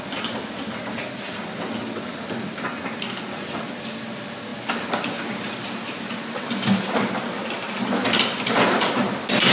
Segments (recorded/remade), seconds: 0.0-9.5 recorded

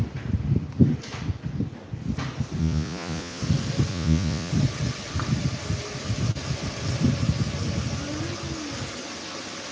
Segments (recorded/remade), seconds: 0.0-2.6 recorded; 2.6-3.4 remade; 3.4-3.9 recorded; 3.9-4.5 remade; 4.5-9.7 recorded

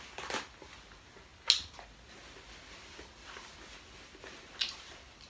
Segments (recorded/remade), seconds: 0.0-5.3 recorded

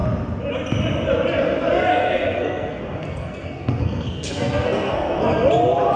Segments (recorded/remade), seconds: 0.0-1.9 recorded; 1.9-5.5 remade; 5.5-6.0 recorded

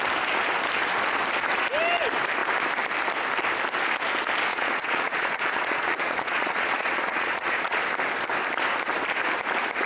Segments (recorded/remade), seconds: 0.0-4.5 recorded; 4.5-7.8 remade; 7.8-9.9 recorded

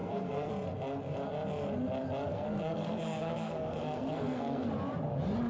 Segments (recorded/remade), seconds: 0.0-0.5 remade; 0.5-2.3 recorded; 2.3-4.7 remade; 4.7-5.5 recorded